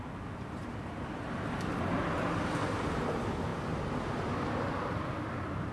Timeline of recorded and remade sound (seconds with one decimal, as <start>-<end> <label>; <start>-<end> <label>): 0.0-5.7 recorded